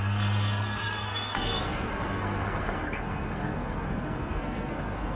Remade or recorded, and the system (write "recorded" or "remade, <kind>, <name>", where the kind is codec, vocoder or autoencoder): remade, codec, SNAC